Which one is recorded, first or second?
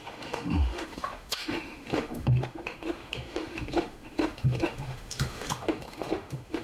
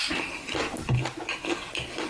second